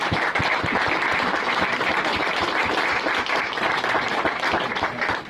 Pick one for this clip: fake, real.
real